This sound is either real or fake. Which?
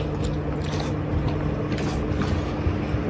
real